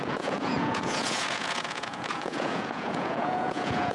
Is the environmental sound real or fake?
fake